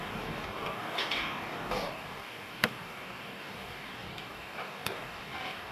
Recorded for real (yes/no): no